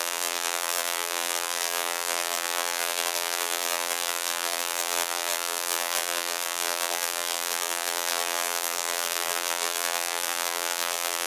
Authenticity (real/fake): fake